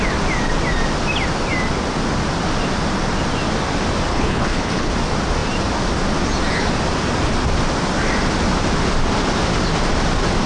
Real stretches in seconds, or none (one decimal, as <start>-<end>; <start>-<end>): 0.0-4.1; 4.9-10.5